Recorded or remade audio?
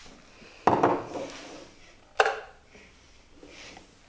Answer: recorded